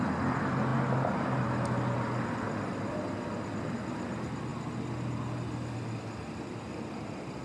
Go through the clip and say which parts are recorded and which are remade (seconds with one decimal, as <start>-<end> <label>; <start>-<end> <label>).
0.0-4.5 remade; 4.5-6.0 recorded; 6.0-7.4 remade